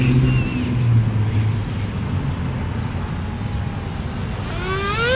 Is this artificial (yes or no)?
no